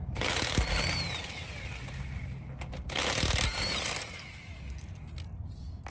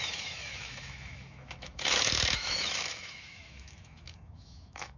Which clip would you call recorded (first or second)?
first